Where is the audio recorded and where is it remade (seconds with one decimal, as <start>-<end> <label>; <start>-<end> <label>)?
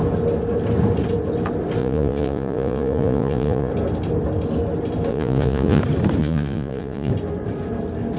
0.0-1.8 recorded; 1.8-3.7 remade; 3.7-5.1 recorded; 5.1-5.8 remade; 5.8-6.2 recorded; 6.2-7.1 remade; 7.1-8.2 recorded